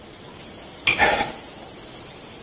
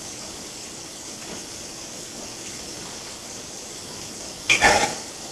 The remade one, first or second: second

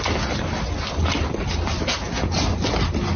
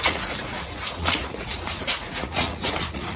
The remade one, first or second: second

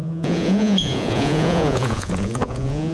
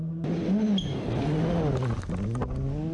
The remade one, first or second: first